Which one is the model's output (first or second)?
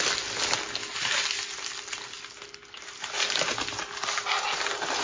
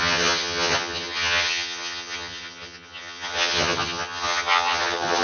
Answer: second